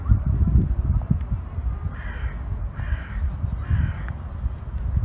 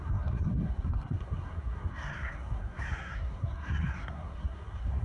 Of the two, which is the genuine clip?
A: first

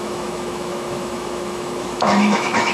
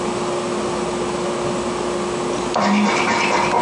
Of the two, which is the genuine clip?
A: second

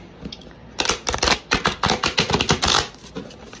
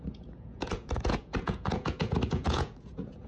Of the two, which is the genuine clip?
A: first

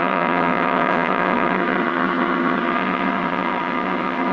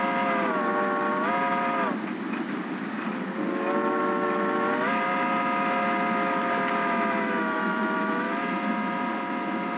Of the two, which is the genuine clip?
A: second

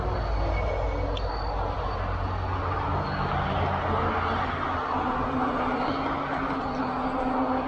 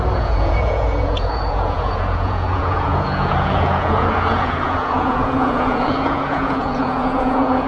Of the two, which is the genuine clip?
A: first